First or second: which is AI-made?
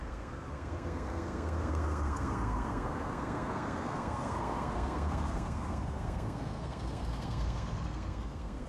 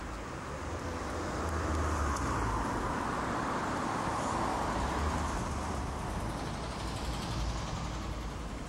first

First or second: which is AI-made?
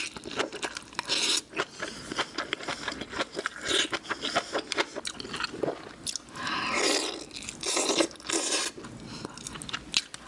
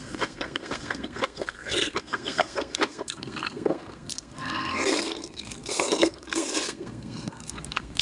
second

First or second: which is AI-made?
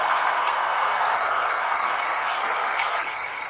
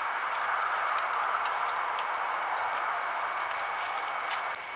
first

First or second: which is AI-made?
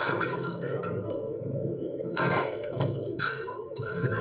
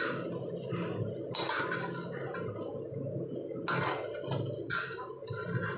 first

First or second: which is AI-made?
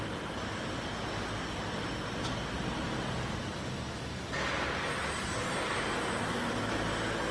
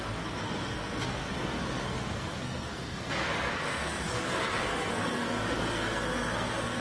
second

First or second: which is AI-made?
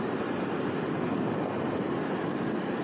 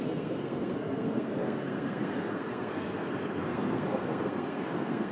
second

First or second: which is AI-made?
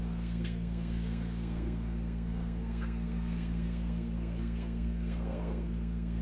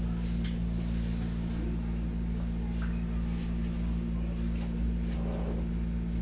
first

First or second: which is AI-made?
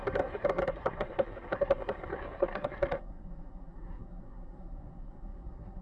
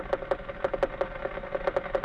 first